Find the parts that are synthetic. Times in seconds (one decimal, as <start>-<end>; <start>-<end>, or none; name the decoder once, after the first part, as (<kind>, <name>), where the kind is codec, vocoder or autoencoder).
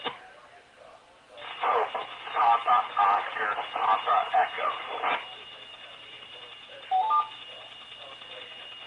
5.7-7.1 (vocoder, BigVGAN v2)